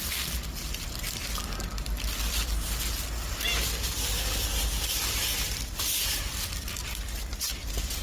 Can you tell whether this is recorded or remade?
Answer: recorded